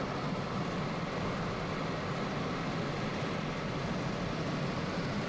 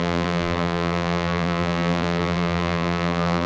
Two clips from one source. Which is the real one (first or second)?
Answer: first